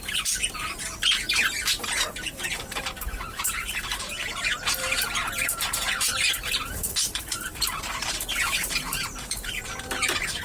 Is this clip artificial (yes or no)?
yes